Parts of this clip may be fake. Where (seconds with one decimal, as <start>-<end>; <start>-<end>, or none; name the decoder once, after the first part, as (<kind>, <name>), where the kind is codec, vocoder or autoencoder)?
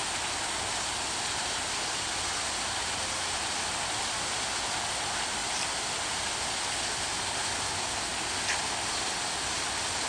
none